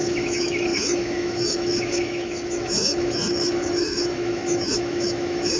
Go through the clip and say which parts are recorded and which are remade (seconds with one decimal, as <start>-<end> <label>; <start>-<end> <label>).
0.0-5.6 remade